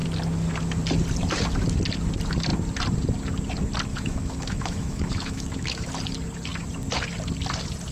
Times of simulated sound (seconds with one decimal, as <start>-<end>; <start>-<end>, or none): 3.9-5.9